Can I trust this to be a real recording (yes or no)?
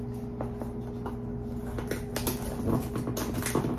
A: yes